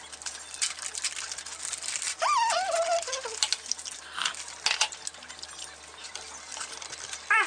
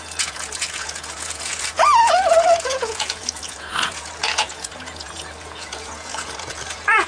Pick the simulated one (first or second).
second